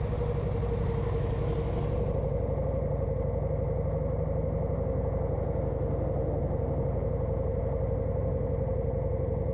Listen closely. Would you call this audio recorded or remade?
recorded